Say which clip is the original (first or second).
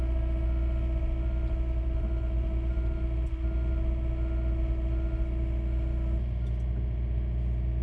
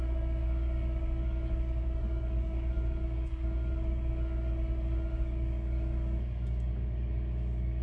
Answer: first